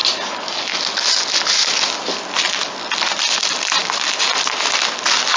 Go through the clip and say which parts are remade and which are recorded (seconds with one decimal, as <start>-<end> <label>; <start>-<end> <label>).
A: 0.0-5.4 recorded